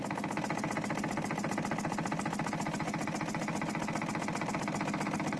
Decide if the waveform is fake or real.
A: real